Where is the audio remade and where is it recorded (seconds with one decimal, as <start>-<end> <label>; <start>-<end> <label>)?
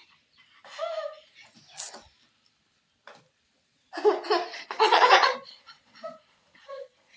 0.0-4.5 recorded; 4.5-7.2 remade